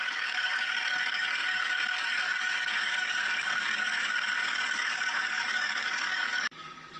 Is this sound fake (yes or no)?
yes